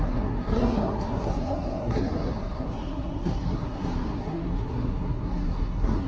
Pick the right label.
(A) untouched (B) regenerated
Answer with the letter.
B